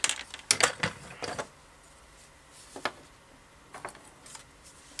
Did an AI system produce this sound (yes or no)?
no